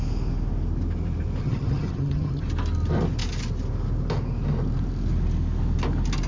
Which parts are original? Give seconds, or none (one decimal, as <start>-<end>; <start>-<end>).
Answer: 0.0-1.4; 2.4-6.3